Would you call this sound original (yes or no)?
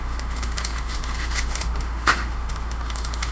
no